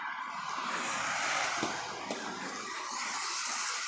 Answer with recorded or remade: remade